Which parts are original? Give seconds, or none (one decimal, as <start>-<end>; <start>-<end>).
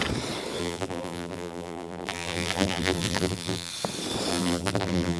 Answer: 0.0-0.6; 3.7-4.3